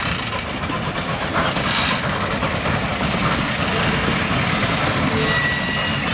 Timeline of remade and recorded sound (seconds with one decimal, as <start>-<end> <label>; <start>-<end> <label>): 0.0-6.1 recorded